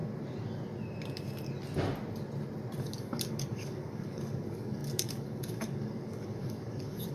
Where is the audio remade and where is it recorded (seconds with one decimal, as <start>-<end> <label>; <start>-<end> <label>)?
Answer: 0.0-2.8 recorded; 2.8-7.1 remade